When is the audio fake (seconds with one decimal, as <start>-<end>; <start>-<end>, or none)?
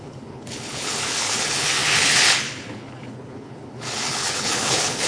0.0-5.1